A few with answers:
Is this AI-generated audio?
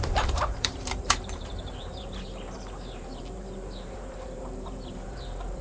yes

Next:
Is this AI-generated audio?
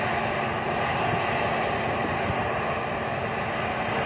no